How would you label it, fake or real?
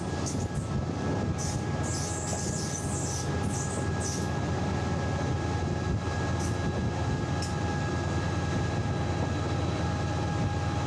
real